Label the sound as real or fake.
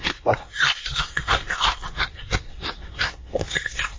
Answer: fake